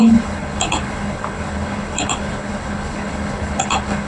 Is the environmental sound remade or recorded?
remade